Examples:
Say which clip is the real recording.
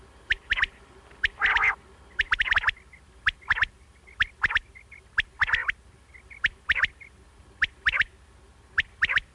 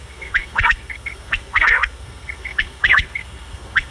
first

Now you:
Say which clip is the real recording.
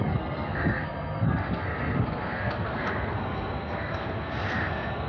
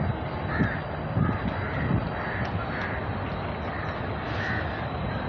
second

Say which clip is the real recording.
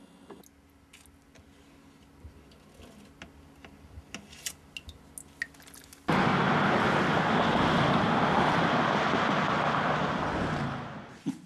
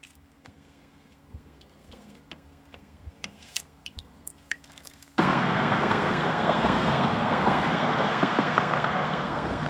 first